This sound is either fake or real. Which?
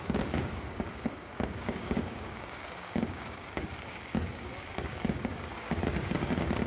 fake